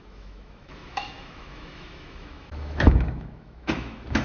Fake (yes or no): yes